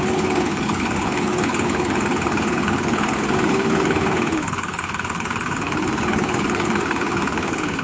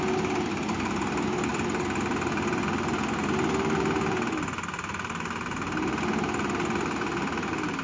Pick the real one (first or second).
second